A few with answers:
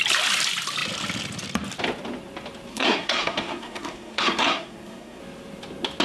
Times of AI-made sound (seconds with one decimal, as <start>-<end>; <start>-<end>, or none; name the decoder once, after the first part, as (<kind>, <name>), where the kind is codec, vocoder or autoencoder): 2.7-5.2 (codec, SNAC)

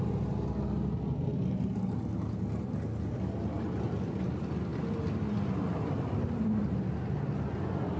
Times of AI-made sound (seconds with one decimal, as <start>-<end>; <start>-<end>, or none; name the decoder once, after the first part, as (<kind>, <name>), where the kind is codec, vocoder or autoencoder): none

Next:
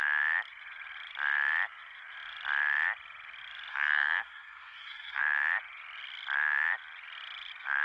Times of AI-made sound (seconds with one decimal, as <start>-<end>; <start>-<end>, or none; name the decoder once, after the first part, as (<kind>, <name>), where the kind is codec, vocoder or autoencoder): 3.7-5.2 (codec, SNAC)

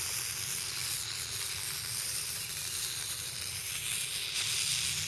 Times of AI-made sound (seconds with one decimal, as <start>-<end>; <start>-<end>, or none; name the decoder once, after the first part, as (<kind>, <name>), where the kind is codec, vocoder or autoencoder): 1.9-3.4 (vocoder, BigVGAN v2)